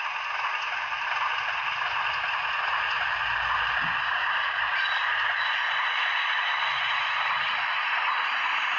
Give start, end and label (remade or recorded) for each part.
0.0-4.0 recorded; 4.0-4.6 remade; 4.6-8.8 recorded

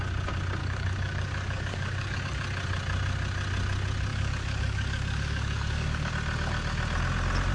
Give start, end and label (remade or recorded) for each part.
0.0-0.6 recorded; 0.6-2.2 remade; 2.2-4.1 recorded; 4.1-6.1 remade; 6.1-7.5 recorded

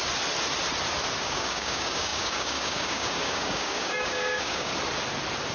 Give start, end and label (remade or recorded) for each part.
0.0-1.2 recorded; 1.2-4.7 remade; 4.7-5.5 recorded

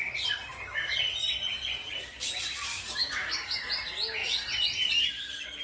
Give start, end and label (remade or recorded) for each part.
0.0-0.5 recorded; 0.5-1.0 remade; 1.0-2.7 recorded; 2.7-3.7 remade; 3.7-5.6 recorded

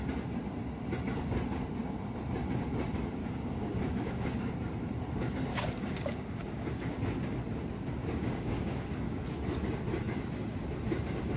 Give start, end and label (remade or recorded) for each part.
0.0-3.2 recorded; 3.2-4.4 remade; 4.4-5.5 recorded; 5.5-7.0 remade; 7.0-8.0 recorded; 8.0-9.2 remade; 9.2-11.4 recorded

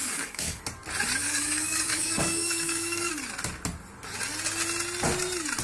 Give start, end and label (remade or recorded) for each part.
0.0-0.6 remade; 0.6-1.2 recorded; 1.2-3.1 remade; 3.1-5.6 recorded